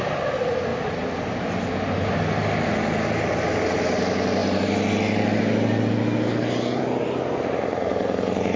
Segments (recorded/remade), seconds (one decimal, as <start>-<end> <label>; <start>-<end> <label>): 0.0-8.6 recorded